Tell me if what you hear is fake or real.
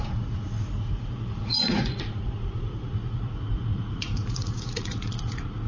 fake